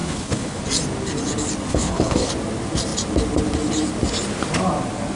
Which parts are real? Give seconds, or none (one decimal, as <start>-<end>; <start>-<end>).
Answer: 0.6-1.7; 2.3-5.2